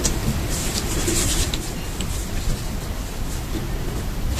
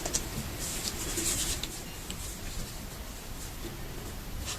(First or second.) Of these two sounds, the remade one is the first